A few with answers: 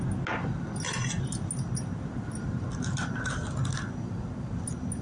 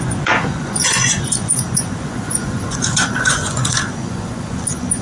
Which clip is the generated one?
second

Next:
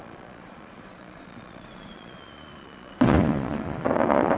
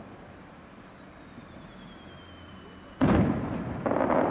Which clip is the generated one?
first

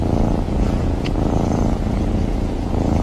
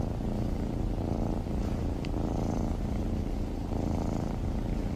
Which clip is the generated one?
first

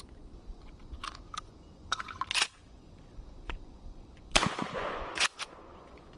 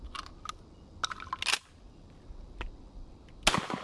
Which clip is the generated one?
first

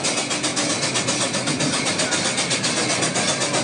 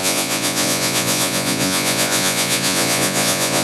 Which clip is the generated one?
second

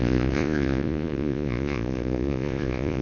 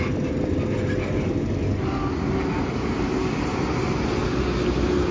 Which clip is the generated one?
first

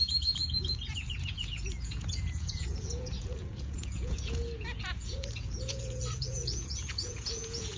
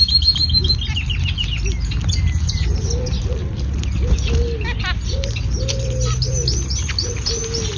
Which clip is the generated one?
first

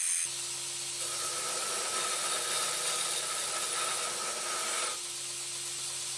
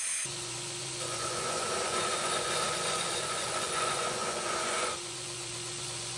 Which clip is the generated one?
second